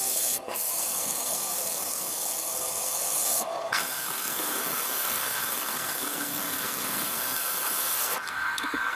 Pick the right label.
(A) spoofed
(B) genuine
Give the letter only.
A